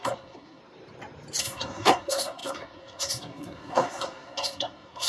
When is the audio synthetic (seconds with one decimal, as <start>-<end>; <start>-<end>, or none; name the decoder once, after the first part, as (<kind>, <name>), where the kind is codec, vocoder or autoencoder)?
0.0-0.6 (codec, SNAC); 1.4-5.1